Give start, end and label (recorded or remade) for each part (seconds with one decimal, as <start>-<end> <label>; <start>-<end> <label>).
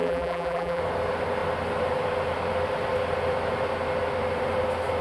0.0-0.8 remade; 0.8-5.0 recorded